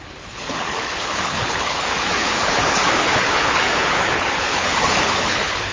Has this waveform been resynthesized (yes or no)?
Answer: yes